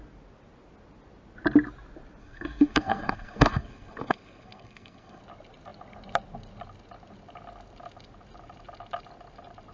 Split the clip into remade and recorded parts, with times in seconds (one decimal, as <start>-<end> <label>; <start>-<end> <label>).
0.0-2.2 recorded; 2.2-5.2 remade; 5.2-9.7 recorded